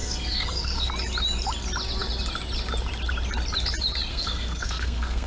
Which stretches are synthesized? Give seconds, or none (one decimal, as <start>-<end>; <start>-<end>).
0.0-0.9; 4.1-5.3